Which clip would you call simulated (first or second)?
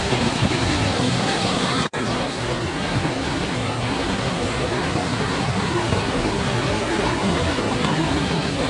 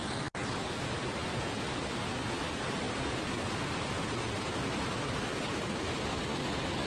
first